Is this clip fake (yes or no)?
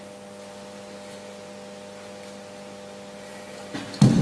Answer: no